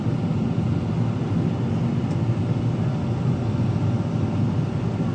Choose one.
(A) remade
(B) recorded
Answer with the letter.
B